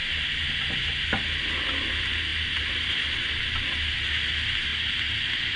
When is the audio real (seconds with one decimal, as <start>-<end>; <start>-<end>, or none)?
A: 0.0-5.6